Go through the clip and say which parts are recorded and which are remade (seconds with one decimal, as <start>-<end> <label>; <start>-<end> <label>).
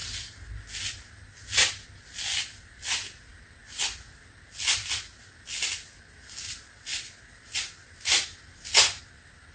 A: 0.0-9.5 recorded